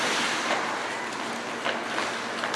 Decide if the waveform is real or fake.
real